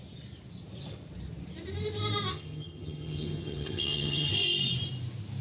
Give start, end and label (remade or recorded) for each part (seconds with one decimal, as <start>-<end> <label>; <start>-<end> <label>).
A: 0.0-2.3 recorded; 2.3-4.3 remade; 4.3-5.4 recorded

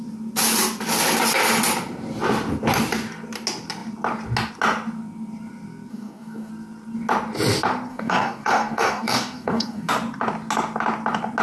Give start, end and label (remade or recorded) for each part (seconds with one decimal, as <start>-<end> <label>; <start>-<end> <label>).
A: 0.0-5.9 recorded; 5.9-6.5 remade; 6.5-7.9 recorded; 7.9-9.9 remade; 9.9-11.4 recorded

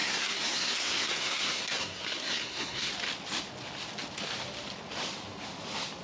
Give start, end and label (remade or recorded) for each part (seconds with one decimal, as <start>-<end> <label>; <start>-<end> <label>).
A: 0.0-2.9 remade; 2.9-6.0 recorded

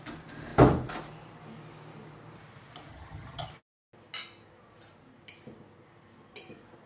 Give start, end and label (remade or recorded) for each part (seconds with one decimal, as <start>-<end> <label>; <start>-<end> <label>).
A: 0.0-2.9 recorded; 2.9-3.5 remade; 3.5-6.9 recorded

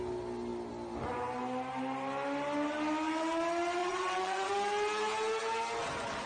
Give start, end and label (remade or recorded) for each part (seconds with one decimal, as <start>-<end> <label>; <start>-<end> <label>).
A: 0.0-3.8 recorded; 3.8-4.5 remade; 4.5-6.3 recorded